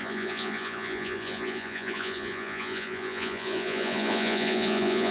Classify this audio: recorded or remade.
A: remade